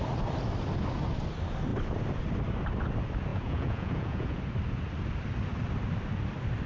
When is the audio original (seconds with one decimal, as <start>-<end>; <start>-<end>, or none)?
0.0-3.3; 4.4-6.7